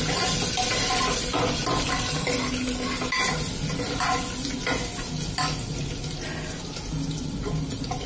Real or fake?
real